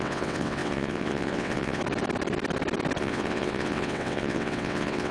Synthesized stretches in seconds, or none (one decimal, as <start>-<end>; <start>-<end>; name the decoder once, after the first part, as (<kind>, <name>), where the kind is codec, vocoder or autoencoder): 0.0-1.8 (vocoder, WaveNeXt); 3.0-5.1

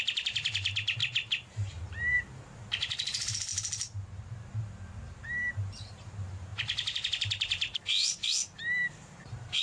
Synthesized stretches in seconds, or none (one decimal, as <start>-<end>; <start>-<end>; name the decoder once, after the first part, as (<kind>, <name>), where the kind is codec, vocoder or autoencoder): 0.0-1.0 (vocoder, BigVGAN v2); 1.5-9.6

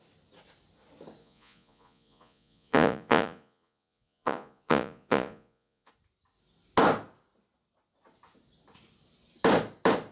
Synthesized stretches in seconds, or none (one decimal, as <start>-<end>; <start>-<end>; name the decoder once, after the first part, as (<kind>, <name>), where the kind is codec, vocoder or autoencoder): 1.2-5.9 (vocoder, Vocos)

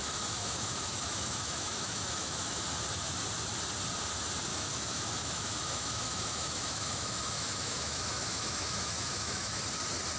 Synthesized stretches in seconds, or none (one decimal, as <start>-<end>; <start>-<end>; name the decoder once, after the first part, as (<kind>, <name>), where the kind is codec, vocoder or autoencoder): 0.0-2.6 (autoencoder, DAC-VAE); 4.5-9.6

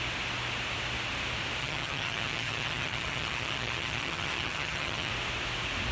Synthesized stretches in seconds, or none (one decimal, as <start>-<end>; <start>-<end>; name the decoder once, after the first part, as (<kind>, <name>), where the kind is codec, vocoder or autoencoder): 1.6-5.1 (vocoder, HiFi-GAN)